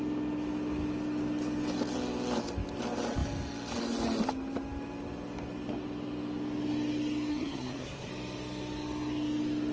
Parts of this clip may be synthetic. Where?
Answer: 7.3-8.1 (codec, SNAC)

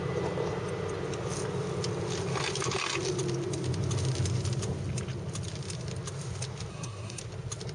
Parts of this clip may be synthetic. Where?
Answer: 6.7-7.2 (codec, SNAC)

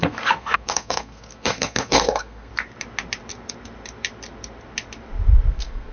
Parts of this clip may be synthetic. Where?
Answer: 0.0-2.5 (codec, SNAC); 5.5-5.9

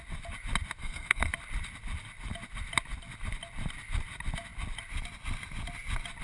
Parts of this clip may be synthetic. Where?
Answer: 0.8-1.3 (codec, SNAC)

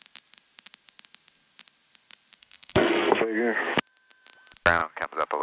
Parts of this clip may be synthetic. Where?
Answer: 2.4-3.2 (codec, SNAC)